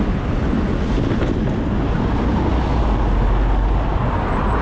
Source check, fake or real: real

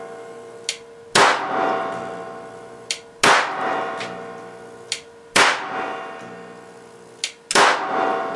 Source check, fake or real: real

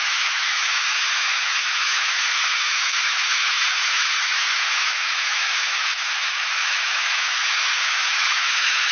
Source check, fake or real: fake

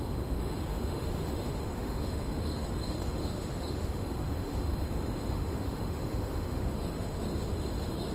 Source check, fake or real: fake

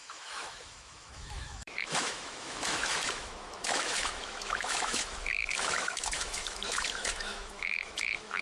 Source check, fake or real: fake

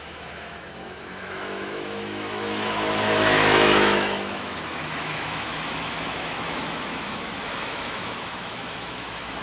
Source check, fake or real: fake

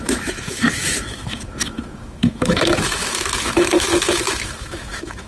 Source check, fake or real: fake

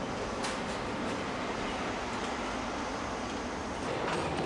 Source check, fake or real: real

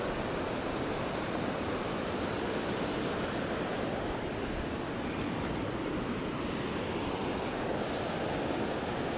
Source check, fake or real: real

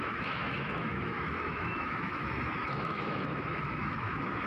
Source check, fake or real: fake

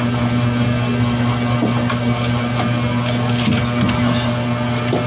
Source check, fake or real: real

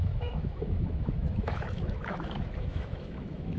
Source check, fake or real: fake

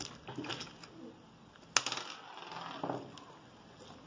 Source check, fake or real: real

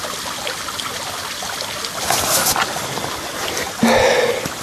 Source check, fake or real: real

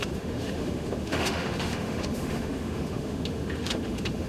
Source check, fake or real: fake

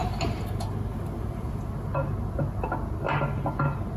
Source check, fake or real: real